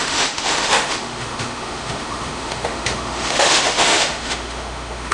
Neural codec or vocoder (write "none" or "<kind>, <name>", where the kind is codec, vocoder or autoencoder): autoencoder, DAC-VAE